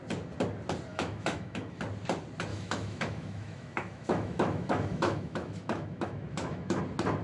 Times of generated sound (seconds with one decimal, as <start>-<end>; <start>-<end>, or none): 0.9-1.8; 2.5-6.8